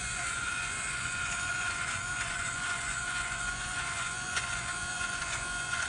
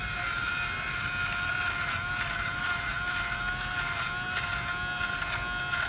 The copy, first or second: first